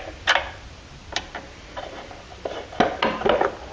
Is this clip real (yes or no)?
yes